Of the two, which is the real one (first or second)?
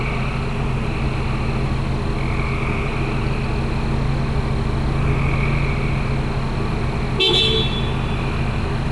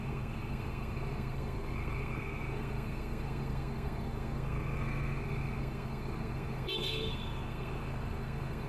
first